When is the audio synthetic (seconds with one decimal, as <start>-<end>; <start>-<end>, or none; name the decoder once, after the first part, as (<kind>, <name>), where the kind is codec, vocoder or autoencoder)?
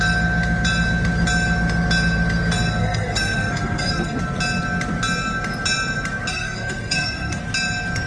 2.8-4.2 (codec, SNAC); 6.3-7.4